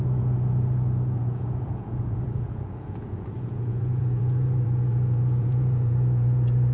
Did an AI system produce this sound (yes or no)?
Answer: yes